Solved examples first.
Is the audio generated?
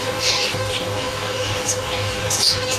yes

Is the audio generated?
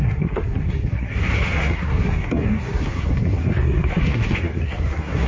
yes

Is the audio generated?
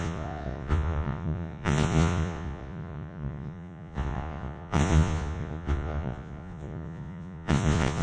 yes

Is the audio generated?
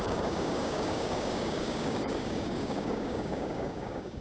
yes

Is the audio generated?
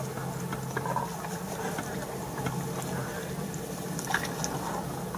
no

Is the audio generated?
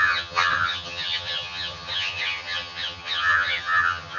yes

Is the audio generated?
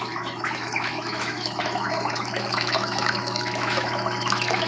yes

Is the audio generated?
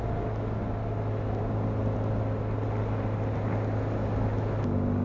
no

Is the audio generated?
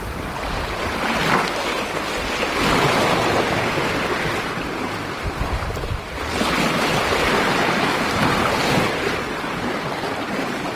no